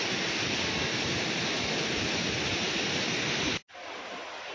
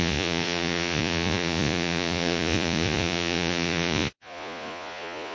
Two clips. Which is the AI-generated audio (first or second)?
second